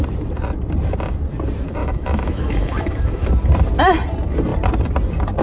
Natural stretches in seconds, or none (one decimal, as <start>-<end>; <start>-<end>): 0.0-1.8; 3.3-5.4

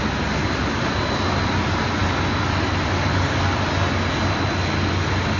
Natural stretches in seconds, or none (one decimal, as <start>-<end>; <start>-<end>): 0.0-5.4

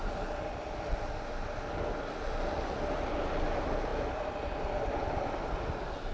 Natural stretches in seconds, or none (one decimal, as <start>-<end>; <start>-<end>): 0.0-6.1

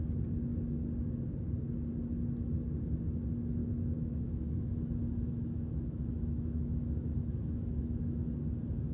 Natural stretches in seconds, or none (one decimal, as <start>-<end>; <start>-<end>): 0.0-3.6; 8.3-8.9